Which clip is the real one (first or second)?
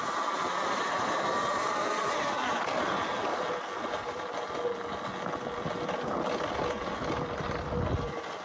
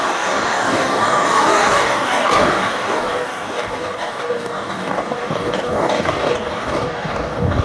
first